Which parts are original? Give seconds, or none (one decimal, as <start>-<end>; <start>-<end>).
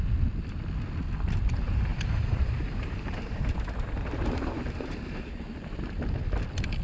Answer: 0.0-1.9; 6.0-6.8